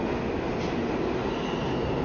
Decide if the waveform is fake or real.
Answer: real